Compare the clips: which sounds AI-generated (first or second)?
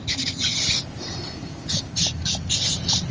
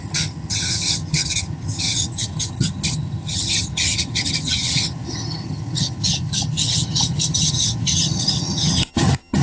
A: second